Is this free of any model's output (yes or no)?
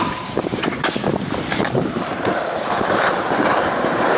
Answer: no